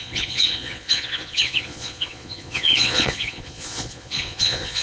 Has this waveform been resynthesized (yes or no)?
yes